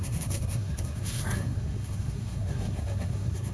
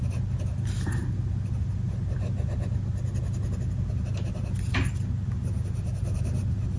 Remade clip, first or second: first